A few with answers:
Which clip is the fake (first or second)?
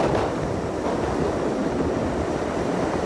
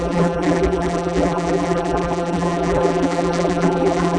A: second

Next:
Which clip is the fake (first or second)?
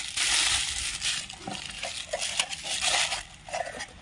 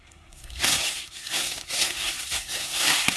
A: second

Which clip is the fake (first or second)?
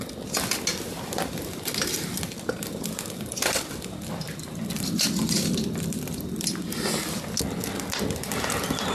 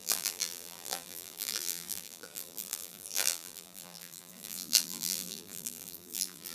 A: second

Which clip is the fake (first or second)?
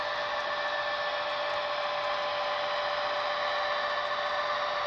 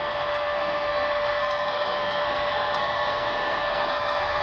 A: second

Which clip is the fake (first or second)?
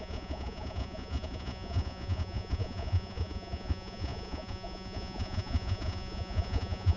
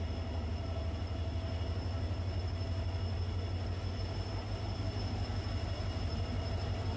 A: first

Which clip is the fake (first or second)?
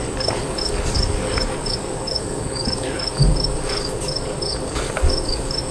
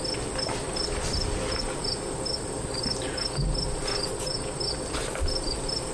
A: first